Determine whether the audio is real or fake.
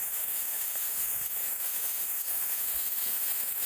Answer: fake